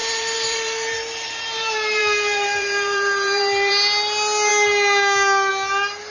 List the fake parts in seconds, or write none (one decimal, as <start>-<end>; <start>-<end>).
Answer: 0.0-3.7